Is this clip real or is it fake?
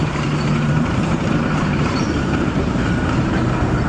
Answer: fake